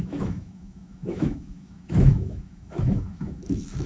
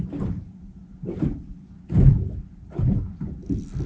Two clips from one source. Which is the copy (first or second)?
first